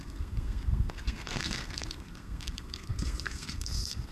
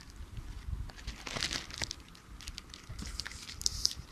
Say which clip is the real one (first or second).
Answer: second